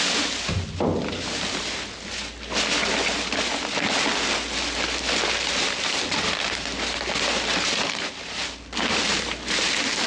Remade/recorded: recorded